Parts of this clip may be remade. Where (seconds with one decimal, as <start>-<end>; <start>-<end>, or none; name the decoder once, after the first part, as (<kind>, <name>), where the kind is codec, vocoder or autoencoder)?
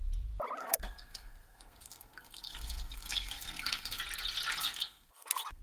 0.6-4.0 (codec, SNAC); 4.6-5.6